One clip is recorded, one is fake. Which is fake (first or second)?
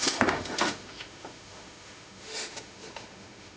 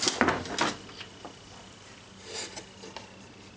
first